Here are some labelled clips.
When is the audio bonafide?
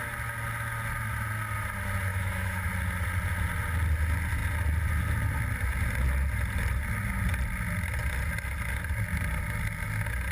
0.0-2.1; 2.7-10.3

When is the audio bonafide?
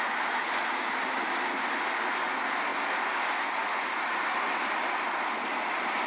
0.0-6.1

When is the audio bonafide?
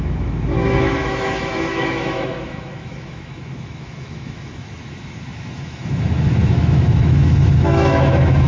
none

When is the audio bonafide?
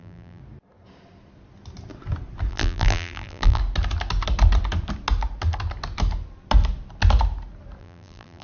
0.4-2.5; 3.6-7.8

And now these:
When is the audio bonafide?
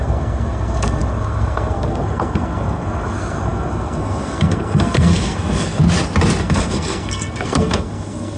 5.8-6.4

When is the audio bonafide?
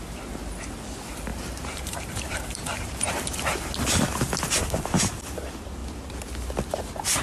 0.0-1.3; 3.1-7.2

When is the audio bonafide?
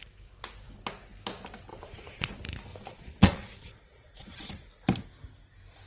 0.0-1.7; 2.3-2.7; 4.5-5.9